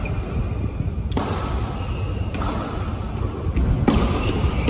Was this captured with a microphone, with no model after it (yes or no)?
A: yes